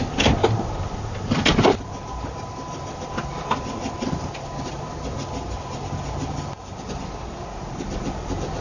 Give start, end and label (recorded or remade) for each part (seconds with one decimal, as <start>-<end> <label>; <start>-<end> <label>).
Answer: 0.0-8.6 recorded